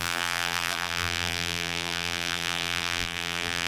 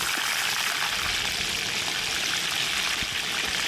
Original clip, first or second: second